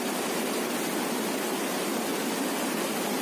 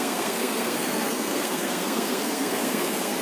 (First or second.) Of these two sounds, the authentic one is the first